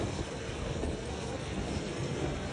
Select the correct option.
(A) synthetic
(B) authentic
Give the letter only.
A